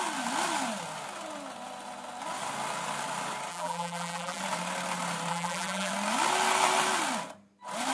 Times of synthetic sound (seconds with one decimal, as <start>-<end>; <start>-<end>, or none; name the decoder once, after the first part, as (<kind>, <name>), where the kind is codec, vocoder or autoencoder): 3.5-4.4 (vocoder, BigVGAN v2); 5.3-5.9